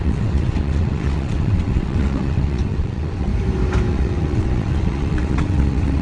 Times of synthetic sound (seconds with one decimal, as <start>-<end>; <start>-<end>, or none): 0.0-3.3; 3.9-6.0